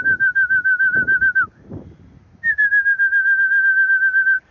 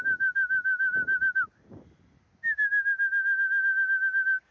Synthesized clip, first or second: first